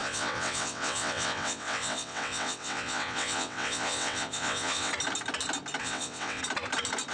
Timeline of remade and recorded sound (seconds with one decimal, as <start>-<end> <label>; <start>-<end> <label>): 0.0-4.9 remade; 4.9-5.8 recorded; 5.8-6.4 remade; 6.4-7.1 recorded